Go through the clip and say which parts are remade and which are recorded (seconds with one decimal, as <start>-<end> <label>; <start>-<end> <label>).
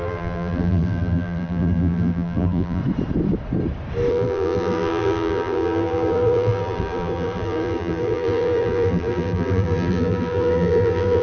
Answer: 0.0-2.8 remade; 2.8-4.1 recorded; 4.1-11.2 remade